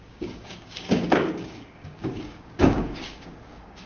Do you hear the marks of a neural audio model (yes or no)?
yes